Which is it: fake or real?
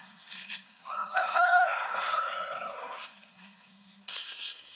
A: fake